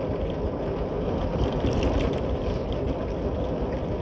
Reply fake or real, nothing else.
real